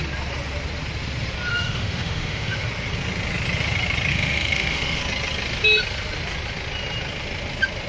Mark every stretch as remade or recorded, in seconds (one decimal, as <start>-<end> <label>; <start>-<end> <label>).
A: 0.0-1.5 recorded; 1.5-2.7 remade; 2.7-4.1 recorded; 4.1-5.0 remade; 5.0-7.9 recorded